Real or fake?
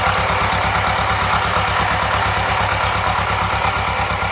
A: real